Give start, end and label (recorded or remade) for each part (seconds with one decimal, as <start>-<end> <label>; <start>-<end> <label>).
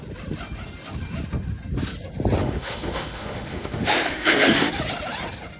0.0-2.4 recorded; 2.4-4.7 remade; 4.7-5.6 recorded